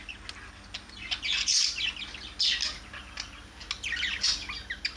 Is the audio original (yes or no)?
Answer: yes